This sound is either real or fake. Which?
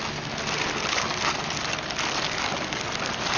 real